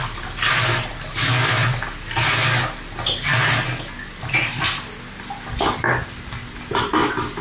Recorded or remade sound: recorded